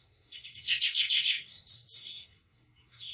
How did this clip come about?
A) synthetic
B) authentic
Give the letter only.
A